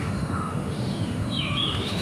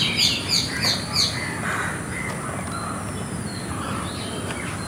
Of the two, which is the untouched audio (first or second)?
second